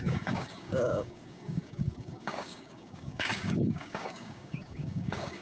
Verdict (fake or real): fake